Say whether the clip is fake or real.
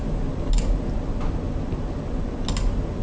real